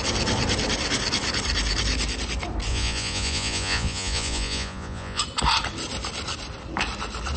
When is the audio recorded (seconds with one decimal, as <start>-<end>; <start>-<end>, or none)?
0.0-2.7; 5.2-7.4